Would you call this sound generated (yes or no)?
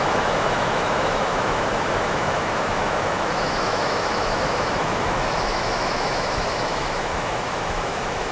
yes